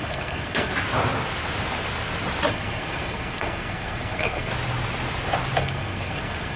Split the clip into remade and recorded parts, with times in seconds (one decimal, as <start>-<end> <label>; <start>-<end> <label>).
0.0-0.7 remade; 0.7-2.5 recorded; 2.5-4.5 remade; 4.5-5.6 recorded; 5.6-6.6 remade